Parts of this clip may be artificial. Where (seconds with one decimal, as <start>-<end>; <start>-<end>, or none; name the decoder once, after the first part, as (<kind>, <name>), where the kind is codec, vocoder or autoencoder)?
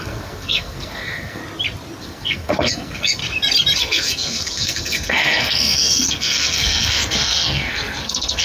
0.0-1.4 (codec, SNAC); 2.0-3.2; 3.8-8.4